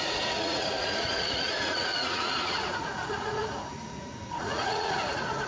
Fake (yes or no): yes